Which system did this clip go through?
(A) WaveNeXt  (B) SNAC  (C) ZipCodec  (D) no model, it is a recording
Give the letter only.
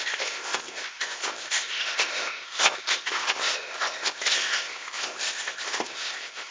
C